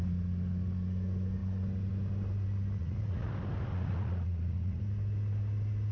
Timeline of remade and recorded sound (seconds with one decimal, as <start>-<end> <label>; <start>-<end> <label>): 0.0-2.8 recorded; 2.8-3.3 remade; 3.3-3.7 recorded; 3.7-4.8 remade; 4.8-5.9 recorded